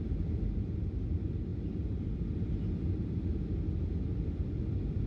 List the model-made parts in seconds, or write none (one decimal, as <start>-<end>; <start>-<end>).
none